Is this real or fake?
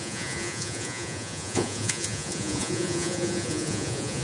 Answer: fake